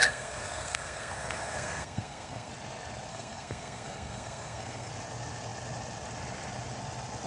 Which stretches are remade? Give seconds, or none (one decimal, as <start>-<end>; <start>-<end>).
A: 0.0-2.5; 3.1-4.9